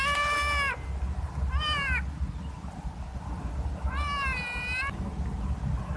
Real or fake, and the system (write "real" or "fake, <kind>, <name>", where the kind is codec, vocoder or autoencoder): real